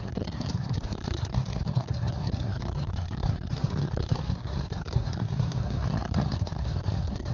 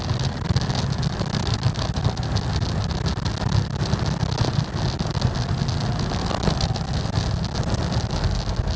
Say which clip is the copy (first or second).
first